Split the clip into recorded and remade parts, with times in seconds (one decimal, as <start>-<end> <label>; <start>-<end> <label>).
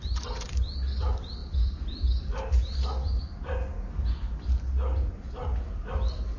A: 0.0-6.4 recorded